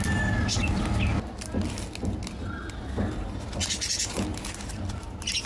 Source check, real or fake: real